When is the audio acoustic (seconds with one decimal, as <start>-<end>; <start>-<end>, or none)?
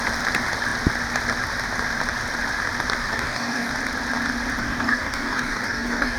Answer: 0.0-3.0; 3.7-4.6